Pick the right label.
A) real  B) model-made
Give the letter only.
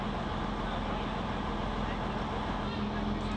A